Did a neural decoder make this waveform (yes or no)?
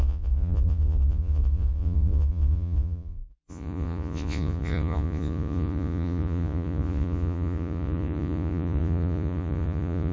yes